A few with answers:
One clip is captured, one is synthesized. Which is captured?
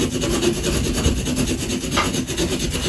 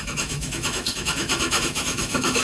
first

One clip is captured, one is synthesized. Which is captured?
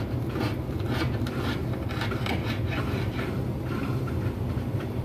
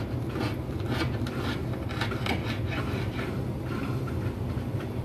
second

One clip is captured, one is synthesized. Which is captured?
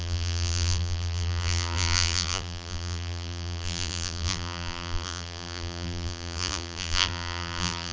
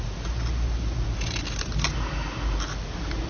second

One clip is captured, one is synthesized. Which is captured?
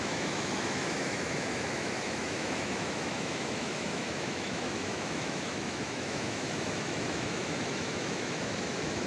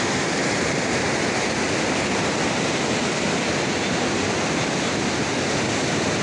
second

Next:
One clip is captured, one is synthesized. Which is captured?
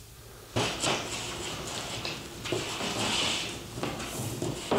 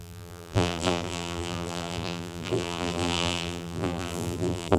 first